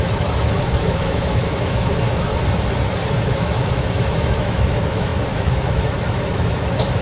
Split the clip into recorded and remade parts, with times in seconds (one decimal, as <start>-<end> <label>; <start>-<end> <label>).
0.0-2.3 remade; 2.3-3.3 recorded; 3.3-7.0 remade